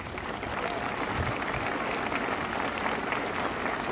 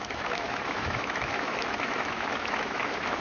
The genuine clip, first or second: first